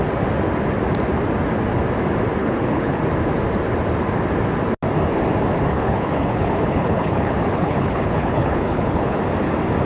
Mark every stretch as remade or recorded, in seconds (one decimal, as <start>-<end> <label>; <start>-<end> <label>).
0.0-2.4 recorded; 2.4-3.0 remade; 3.0-5.7 recorded; 5.7-9.2 remade; 9.2-9.9 recorded